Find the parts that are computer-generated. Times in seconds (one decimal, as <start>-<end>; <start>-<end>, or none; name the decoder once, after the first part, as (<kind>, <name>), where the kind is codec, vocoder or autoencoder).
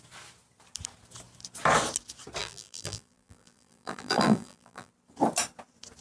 2.4-4.9 (vocoder, BigVGAN v2)